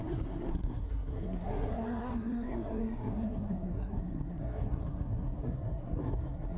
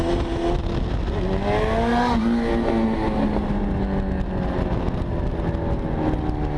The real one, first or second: second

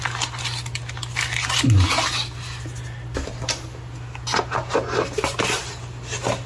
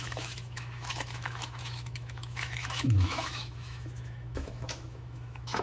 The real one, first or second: first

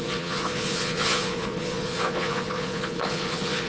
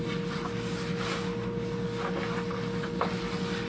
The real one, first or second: second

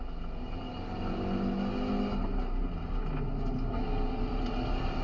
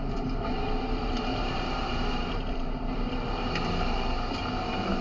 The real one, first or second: first